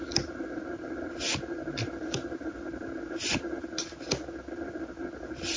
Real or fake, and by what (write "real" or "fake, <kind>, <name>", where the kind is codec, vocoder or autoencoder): real